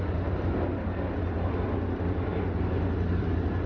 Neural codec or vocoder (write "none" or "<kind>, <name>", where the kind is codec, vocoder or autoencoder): none